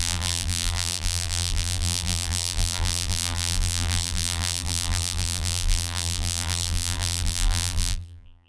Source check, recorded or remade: remade